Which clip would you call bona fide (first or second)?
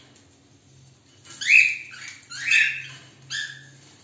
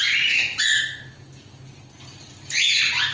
first